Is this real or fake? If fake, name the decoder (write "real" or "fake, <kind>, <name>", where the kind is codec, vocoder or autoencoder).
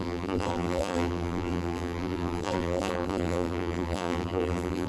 fake, vocoder, BigVGAN v2